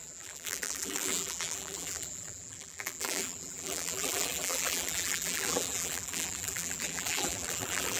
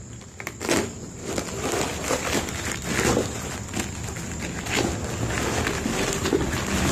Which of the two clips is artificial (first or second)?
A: first